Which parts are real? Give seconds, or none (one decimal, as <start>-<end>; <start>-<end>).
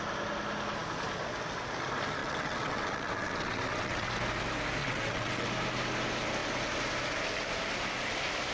0.0-2.2; 4.1-4.8; 5.5-8.5